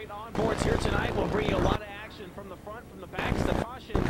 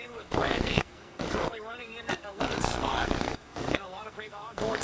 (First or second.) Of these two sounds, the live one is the first